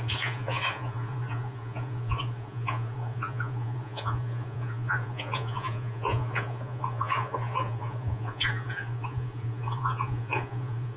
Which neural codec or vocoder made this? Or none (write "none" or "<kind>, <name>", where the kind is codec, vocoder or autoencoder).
vocoder, Vocos